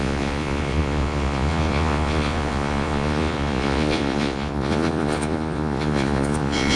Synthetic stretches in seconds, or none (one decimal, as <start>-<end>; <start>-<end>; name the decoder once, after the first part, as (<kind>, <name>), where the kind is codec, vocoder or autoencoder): 0.0-6.8 (vocoder, Vocos)